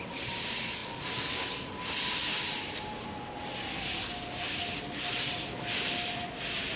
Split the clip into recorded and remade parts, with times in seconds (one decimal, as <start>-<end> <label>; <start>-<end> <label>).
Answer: 0.0-6.8 recorded